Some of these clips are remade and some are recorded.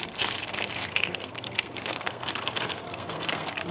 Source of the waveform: remade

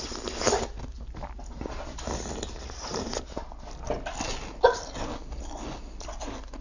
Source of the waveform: recorded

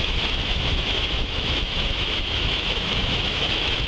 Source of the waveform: remade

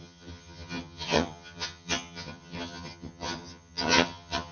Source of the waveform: remade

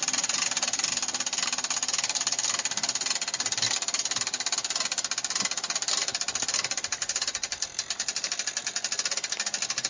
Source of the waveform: recorded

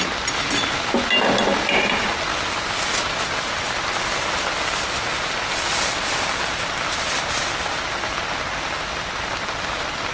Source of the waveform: recorded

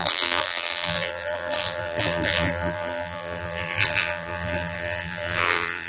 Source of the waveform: remade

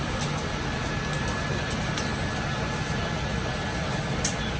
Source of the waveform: recorded